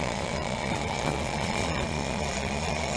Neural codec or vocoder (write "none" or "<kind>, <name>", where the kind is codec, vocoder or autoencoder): vocoder, Vocos